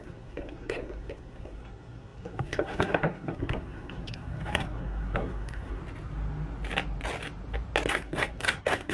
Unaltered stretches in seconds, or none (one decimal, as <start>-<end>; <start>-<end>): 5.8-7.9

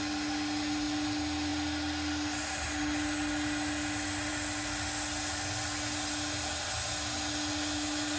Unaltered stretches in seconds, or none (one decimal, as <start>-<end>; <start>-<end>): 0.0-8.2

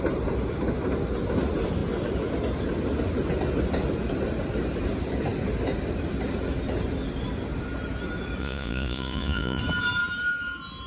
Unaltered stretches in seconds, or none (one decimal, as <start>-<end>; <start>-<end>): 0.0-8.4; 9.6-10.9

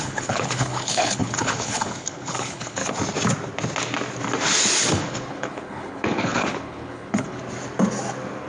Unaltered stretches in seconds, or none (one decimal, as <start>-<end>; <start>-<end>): 2.8-4.9; 7.4-8.5

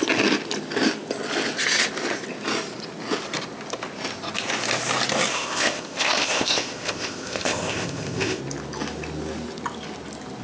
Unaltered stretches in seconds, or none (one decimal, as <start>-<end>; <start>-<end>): 0.0-5.3; 8.4-10.4

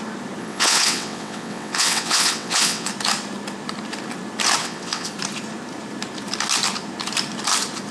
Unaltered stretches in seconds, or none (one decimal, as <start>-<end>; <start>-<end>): 0.0-0.4; 2.9-4.6; 5.1-7.9

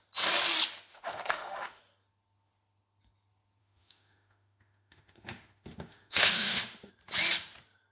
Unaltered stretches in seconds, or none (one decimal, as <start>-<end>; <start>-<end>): 0.0-0.9; 1.8-3.6; 6.9-7.9